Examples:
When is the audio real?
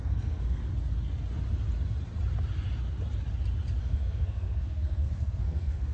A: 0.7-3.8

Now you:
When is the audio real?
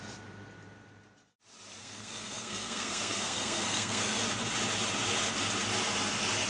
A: 0.0-1.8; 4.2-6.5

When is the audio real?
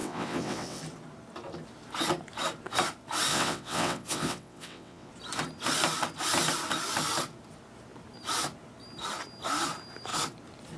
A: 0.8-3.3; 5.1-10.8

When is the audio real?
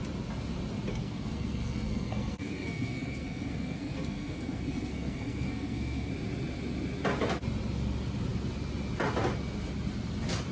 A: 0.0-0.9; 6.1-10.5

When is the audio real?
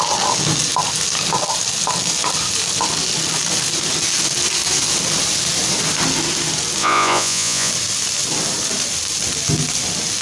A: 0.0-6.8; 7.7-10.2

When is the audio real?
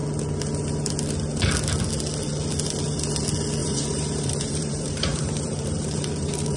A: 0.0-3.6